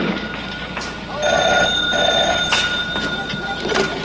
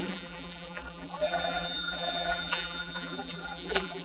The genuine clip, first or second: first